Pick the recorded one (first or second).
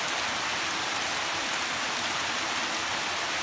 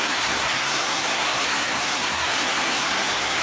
first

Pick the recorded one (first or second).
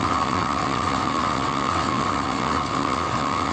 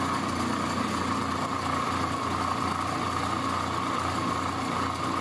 second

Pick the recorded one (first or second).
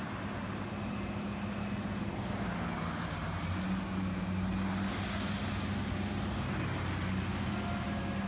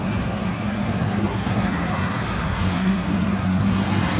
first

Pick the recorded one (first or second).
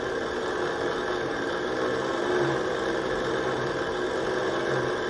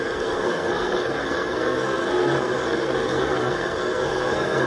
first